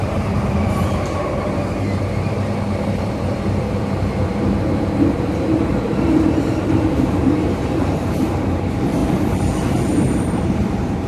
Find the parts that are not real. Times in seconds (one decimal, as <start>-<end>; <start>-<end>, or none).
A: 0.0-11.1